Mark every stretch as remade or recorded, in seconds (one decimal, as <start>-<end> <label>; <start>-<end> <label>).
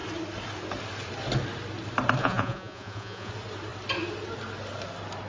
0.0-2.2 recorded; 2.2-3.3 remade; 3.3-5.3 recorded